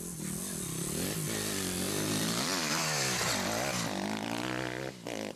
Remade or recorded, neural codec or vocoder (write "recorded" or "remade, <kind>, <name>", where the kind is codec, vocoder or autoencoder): recorded